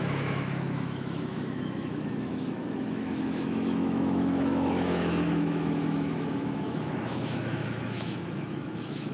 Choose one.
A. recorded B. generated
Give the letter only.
B